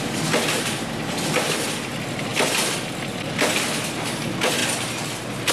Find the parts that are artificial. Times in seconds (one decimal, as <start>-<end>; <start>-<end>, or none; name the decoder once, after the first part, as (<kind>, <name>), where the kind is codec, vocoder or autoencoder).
none